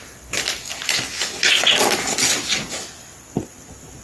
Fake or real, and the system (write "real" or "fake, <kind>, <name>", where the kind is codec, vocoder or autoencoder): real